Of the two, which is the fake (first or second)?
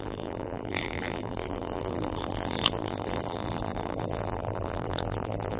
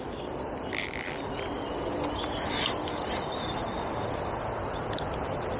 first